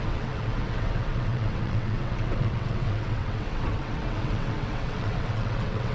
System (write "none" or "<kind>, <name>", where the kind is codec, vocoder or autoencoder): vocoder, WaveNeXt